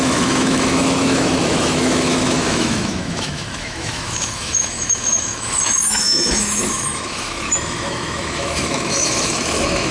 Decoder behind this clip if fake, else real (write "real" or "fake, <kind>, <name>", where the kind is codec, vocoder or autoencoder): fake, autoencoder, DAC-VAE